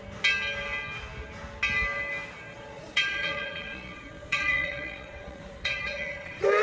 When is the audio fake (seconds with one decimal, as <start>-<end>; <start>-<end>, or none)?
2.5-6.6